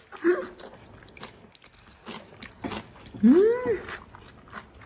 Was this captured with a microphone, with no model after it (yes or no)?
yes